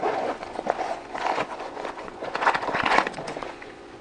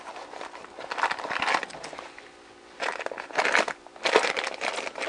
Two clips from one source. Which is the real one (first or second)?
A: second